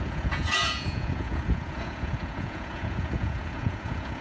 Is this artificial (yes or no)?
yes